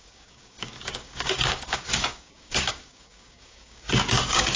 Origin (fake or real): fake